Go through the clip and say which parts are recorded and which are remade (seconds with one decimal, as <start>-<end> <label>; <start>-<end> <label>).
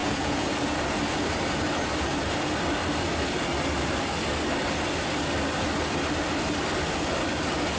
0.0-0.5 remade; 0.5-7.8 recorded